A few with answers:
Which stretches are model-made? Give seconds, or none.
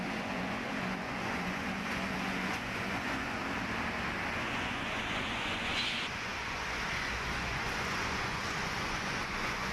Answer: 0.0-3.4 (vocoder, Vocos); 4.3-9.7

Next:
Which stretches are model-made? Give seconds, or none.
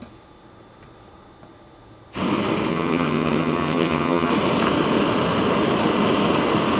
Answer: 2.7-4.3 (vocoder, HiFi-GAN)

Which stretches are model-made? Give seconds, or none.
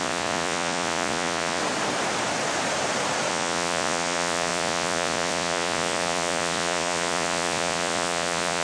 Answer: 0.0-1.6 (vocoder, Vocos); 3.3-8.6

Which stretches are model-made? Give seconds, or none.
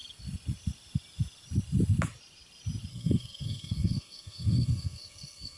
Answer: 2.9-5.6 (codec, SNAC)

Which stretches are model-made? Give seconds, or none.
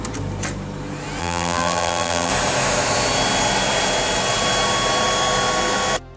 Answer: 1.2-2.3 (vocoder, BigVGAN v2)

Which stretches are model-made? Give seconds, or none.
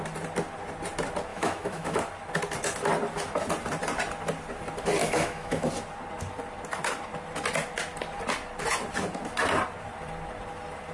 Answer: 1.3-2.0 (autoencoder, DAC-VAE); 5.0-5.7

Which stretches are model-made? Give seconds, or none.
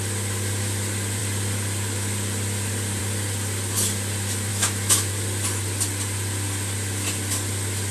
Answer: 4.5-5.1 (autoencoder, DAC-VAE)